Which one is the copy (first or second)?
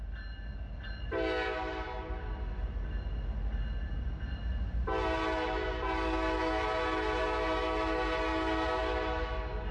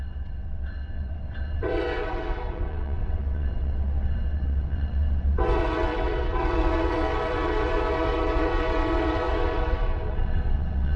second